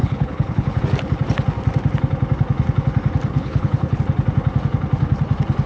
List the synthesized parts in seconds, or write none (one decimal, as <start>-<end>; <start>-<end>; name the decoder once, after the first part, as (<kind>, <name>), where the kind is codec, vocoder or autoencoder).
0.0-0.8 (codec, HILCodec); 3.3-4.0